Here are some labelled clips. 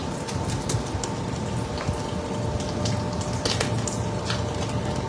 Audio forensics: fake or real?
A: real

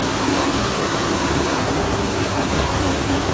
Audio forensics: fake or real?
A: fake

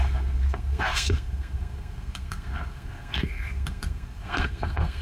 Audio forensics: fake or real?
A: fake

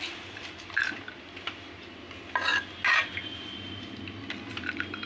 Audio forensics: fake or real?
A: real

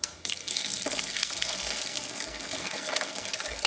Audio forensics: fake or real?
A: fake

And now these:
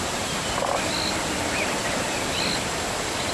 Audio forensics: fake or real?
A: real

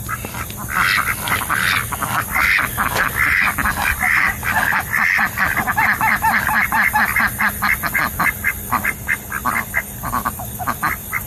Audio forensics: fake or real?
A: real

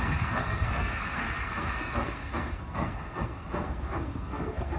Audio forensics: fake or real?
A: fake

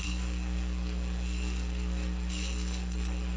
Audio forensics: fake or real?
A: fake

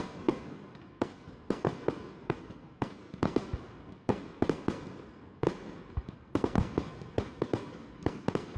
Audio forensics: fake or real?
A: fake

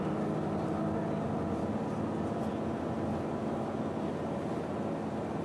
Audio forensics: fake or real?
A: real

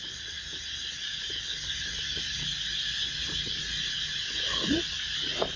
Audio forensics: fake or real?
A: real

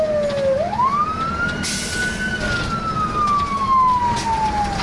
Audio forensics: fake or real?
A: real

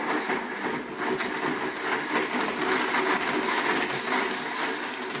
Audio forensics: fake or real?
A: real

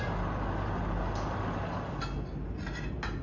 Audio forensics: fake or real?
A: real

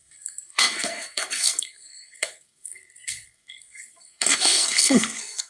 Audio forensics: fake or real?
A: fake